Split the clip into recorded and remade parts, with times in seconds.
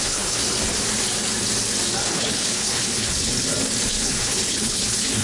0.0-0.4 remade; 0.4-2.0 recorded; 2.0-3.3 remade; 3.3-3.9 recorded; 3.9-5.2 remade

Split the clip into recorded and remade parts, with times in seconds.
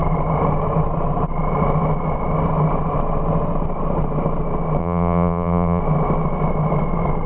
0.0-4.8 recorded; 4.8-5.8 remade; 5.8-7.3 recorded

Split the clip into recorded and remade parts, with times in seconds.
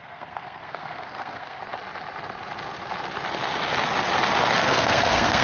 0.0-1.6 remade; 1.6-4.6 recorded; 4.6-5.4 remade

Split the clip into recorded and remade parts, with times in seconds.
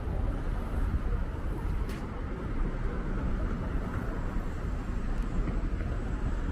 0.0-1.2 recorded; 1.2-5.1 remade; 5.1-6.5 recorded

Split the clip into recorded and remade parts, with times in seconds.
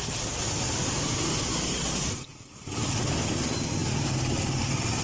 0.0-5.0 recorded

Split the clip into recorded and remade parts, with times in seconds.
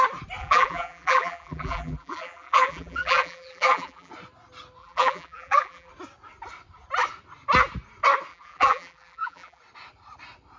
0.0-0.4 recorded; 0.4-4.1 remade; 4.1-4.8 recorded; 4.8-5.9 remade; 5.9-8.3 recorded; 8.3-9.6 remade; 9.6-10.6 recorded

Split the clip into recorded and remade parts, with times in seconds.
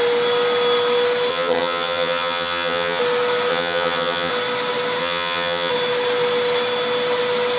0.0-1.3 recorded; 1.3-3.0 remade; 3.0-3.5 recorded; 3.5-4.3 remade; 4.3-5.0 recorded; 5.0-5.7 remade; 5.7-7.6 recorded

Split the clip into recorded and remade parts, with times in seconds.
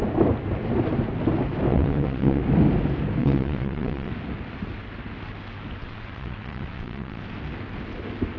0.0-1.7 recorded; 1.7-2.4 remade; 2.4-3.2 recorded; 3.2-4.1 remade; 4.1-5.8 recorded; 5.8-7.2 remade; 7.2-8.4 recorded